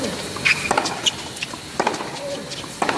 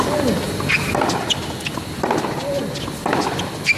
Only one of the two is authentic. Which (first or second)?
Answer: second